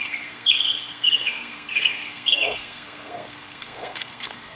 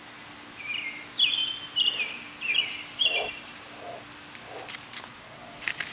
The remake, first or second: first